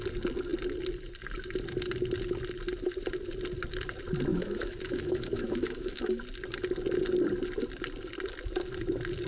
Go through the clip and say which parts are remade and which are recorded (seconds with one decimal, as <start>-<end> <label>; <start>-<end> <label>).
0.0-4.3 recorded; 4.3-6.2 remade; 6.2-9.3 recorded